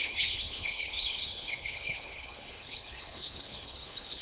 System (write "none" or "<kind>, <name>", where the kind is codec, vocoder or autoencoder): codec, HILCodec